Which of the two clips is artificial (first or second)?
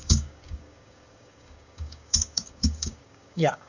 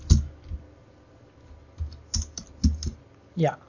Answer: first